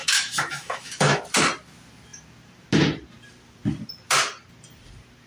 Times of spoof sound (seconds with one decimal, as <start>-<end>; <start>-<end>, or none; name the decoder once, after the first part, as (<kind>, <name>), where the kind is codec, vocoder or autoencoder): 0.0-1.2 (autoencoder, DAC-VAE)